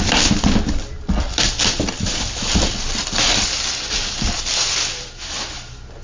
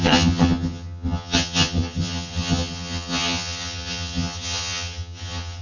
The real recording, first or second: first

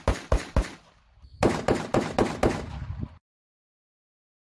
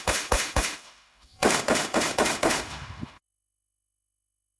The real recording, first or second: first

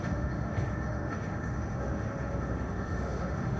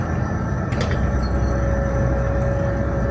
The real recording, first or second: second